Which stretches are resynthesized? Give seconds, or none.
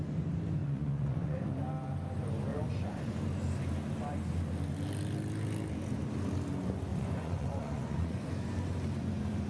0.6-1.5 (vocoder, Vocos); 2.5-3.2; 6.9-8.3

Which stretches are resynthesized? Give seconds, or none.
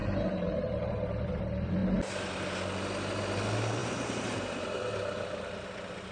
0.0-1.4 (vocoder, BigVGAN v2); 3.8-4.4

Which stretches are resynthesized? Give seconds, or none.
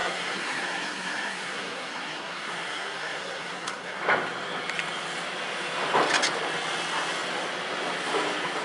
0.0-4.0 (codec, SNAC)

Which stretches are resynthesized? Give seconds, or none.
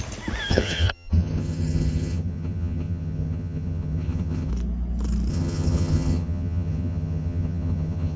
0.5-4.5 (vocoder, HiFi-GAN); 5.3-8.2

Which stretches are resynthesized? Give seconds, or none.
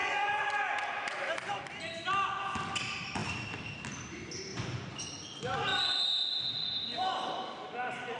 0.0-0.5 (vocoder, Vocos); 4.5-5.0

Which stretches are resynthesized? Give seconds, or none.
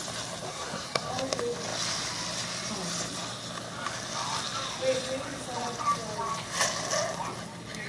0.5-1.1 (codec, SNAC)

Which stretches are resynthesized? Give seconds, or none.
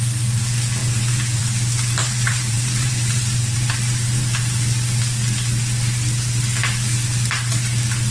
0.8-1.4 (vocoder, BigVGAN v2); 2.0-4.6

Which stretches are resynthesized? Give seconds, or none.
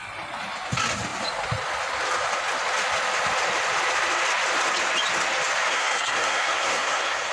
5.7-7.3 (codec, SNAC)